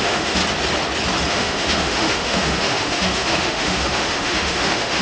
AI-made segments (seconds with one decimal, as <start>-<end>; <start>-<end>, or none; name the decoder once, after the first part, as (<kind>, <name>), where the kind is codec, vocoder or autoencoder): 0.0-0.4 (autoencoder, DAC-VAE); 1.3-5.0